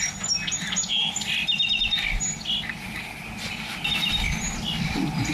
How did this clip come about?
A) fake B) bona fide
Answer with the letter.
B